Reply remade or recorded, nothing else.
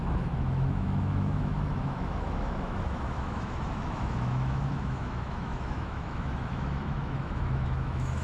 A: remade